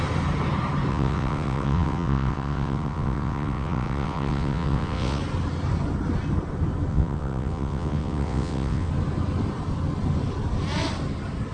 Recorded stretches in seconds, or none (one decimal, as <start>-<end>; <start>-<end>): 0.0-0.9; 5.2-6.9; 8.9-11.5